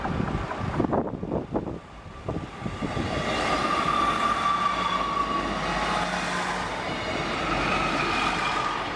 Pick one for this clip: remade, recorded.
recorded